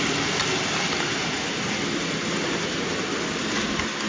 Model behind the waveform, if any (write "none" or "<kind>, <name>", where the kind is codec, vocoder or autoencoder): none